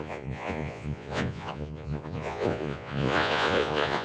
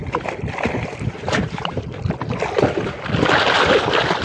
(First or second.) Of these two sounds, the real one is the second